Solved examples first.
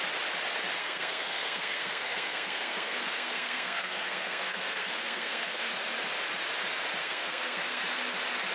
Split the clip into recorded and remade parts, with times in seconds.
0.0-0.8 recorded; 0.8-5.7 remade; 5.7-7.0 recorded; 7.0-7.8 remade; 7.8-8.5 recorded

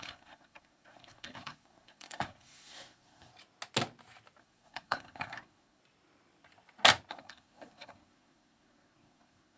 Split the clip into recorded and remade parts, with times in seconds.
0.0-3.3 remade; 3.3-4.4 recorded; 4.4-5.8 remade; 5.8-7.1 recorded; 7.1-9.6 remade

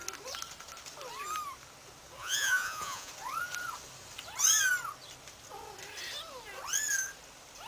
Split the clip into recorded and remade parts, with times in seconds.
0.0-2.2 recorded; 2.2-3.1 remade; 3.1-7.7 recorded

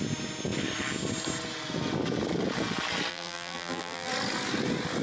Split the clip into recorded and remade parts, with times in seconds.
0.0-3.1 recorded; 3.1-4.1 remade; 4.1-5.0 recorded

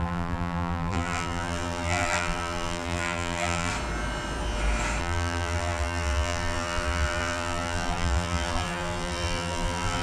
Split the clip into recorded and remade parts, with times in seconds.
0.0-3.7 remade; 3.7-5.0 recorded; 5.0-10.0 remade